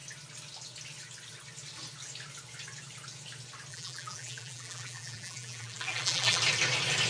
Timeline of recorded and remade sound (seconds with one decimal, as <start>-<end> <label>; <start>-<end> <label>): 0.0-3.7 recorded; 3.7-6.4 remade; 6.4-7.1 recorded